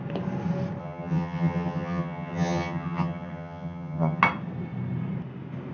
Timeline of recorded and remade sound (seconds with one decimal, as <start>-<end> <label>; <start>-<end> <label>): 0.0-0.8 recorded; 0.8-4.2 remade; 4.2-5.7 recorded